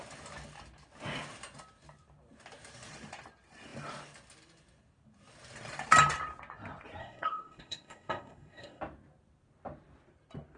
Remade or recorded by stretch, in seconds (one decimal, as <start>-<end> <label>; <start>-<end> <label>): 0.0-7.0 recorded; 7.0-8.8 remade; 8.8-10.6 recorded